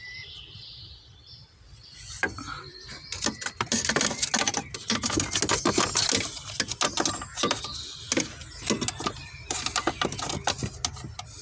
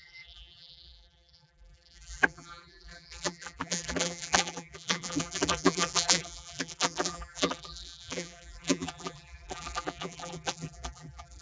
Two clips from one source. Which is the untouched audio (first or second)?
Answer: first